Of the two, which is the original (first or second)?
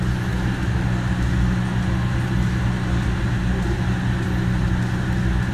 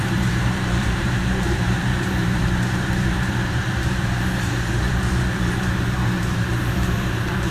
first